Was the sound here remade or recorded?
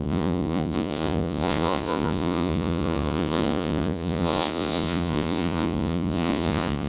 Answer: remade